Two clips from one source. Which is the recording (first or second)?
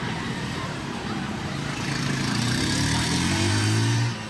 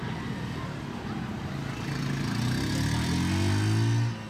second